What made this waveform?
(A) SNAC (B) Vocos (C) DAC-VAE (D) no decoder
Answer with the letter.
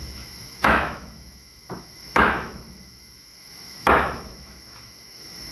C